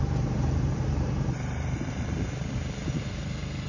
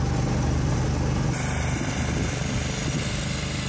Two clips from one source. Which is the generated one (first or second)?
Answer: first